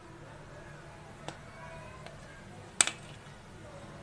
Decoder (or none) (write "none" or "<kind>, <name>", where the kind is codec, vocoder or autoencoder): none